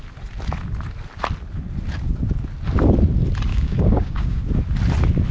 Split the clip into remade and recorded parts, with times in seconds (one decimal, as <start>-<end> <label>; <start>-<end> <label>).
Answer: 0.0-3.5 recorded; 3.5-4.4 remade; 4.4-5.3 recorded